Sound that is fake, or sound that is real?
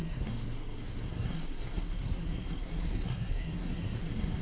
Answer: fake